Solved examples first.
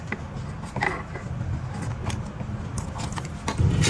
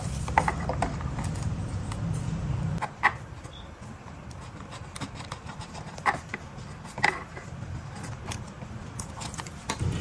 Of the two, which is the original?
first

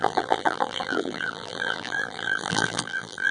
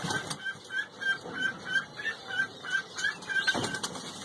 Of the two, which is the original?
second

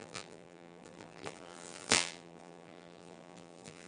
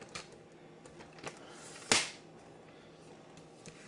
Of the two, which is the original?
second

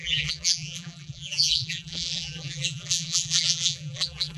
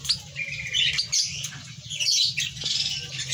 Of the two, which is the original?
second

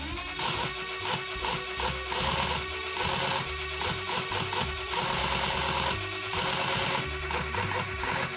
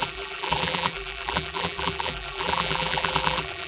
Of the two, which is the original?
first